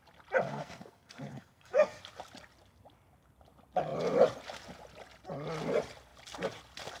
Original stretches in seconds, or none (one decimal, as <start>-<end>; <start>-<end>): 0.0-0.5; 1.9-7.0